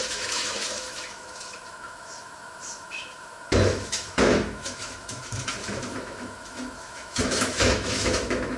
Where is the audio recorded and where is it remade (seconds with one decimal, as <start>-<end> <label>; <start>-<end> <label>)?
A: 0.0-8.6 remade

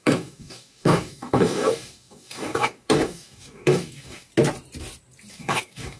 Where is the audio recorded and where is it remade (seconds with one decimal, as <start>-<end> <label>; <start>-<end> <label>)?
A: 0.0-4.3 remade; 4.3-5.3 recorded; 5.3-6.0 remade

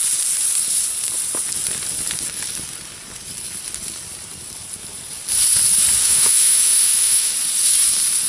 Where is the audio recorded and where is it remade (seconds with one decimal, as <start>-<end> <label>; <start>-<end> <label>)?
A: 0.0-6.0 recorded; 6.0-7.3 remade; 7.3-8.3 recorded